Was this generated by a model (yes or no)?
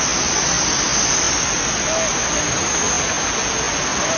no